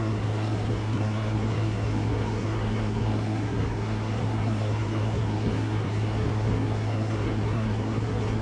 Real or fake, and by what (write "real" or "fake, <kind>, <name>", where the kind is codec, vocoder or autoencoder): fake, codec, SNAC